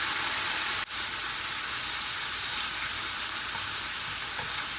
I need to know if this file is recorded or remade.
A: recorded